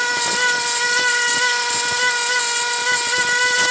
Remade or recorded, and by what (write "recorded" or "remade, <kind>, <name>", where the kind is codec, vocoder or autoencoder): recorded